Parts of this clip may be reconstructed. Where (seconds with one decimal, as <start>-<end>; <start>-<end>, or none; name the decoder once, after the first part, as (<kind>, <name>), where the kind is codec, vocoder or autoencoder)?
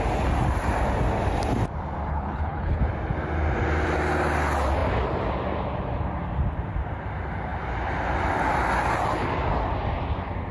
2.1-2.8 (codec, HILCodec)